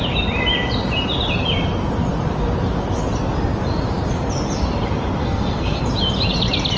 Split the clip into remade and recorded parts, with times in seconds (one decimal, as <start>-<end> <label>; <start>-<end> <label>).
0.0-5.2 recorded; 5.2-5.8 remade; 5.8-6.8 recorded